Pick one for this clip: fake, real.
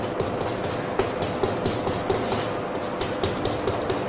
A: real